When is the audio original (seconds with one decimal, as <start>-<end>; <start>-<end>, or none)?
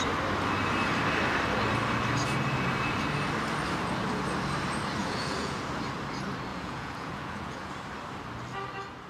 0.0-5.0; 5.6-6.5; 7.7-9.1